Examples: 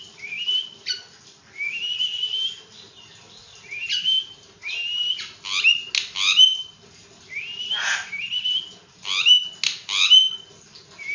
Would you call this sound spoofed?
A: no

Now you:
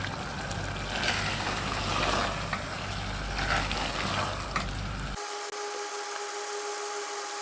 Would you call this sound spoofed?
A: no